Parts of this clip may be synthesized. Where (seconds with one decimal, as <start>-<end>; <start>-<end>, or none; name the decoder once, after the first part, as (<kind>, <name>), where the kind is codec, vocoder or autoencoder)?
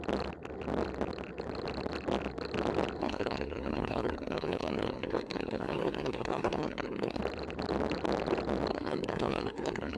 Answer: 3.0-7.2 (codec, SNAC); 8.7-10.0